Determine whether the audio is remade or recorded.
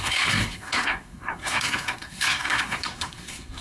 remade